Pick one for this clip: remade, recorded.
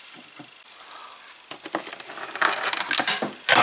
recorded